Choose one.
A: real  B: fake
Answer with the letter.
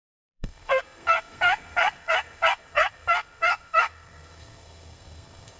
B